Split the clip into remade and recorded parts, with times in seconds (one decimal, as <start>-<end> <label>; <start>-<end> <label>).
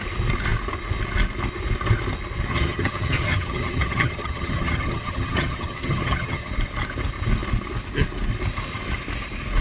0.0-2.5 recorded; 2.5-6.5 remade; 6.5-9.6 recorded